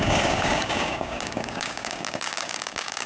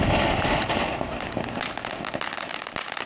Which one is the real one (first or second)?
second